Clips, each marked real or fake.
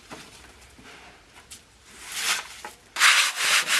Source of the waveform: real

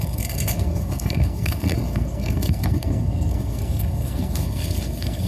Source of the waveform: fake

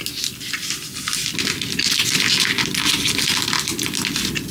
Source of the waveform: real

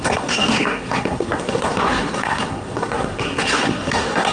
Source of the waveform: fake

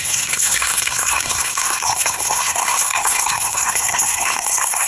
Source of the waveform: fake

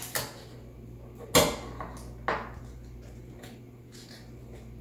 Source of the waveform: real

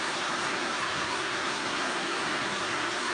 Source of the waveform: fake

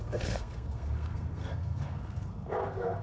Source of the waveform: fake